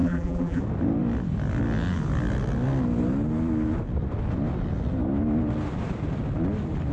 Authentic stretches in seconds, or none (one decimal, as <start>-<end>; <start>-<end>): 0.6-6.9